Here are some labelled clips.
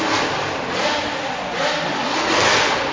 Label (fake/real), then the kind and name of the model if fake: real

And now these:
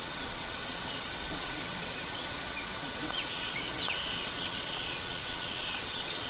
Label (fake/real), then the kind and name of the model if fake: fake, vocoder, WaveNeXt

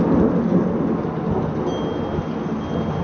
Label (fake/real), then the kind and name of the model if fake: real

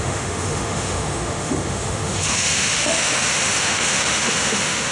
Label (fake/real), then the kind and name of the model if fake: fake, autoencoder, DAC-VAE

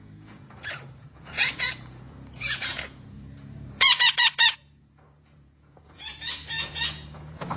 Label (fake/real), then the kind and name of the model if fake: fake, vocoder, Vocos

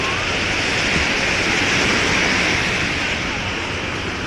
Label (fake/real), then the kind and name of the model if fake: real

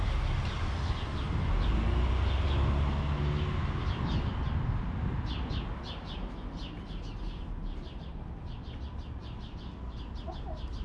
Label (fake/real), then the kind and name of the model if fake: real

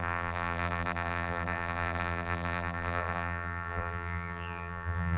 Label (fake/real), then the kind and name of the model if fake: fake, vocoder, BigVGAN v2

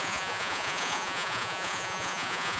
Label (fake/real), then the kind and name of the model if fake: fake, vocoder, Vocos